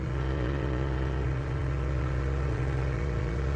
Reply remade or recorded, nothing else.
remade